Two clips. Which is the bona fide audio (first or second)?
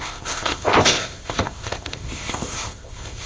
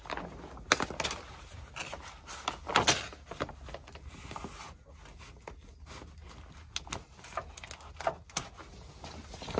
second